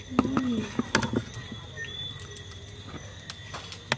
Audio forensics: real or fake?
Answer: real